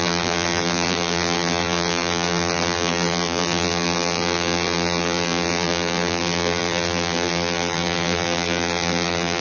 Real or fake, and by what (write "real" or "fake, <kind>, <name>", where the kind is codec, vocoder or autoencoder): fake, vocoder, BigVGAN v2